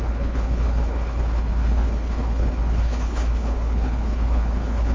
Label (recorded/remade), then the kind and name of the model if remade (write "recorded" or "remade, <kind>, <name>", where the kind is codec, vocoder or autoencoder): remade, codec, HILCodec